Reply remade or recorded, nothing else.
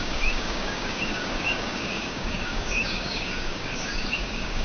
remade